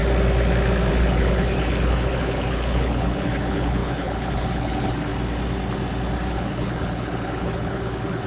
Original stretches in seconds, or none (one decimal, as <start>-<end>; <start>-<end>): 0.0-0.9; 5.1-6.3